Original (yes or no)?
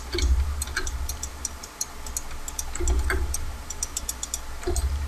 yes